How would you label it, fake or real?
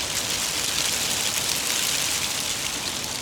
real